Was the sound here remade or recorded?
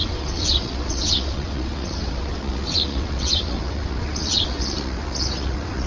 remade